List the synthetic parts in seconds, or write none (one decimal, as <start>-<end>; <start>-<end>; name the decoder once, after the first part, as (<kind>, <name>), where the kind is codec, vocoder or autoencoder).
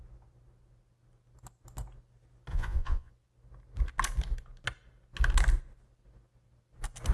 2.5-3.1 (vocoder, Vocos)